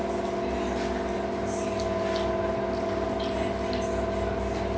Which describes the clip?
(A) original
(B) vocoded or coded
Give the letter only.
A